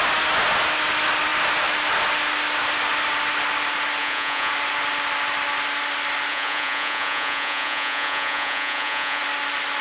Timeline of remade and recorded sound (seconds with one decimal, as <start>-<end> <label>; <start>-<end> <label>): 0.0-4.0 recorded; 4.0-4.5 remade; 4.5-6.3 recorded; 6.3-9.2 remade; 9.2-9.8 recorded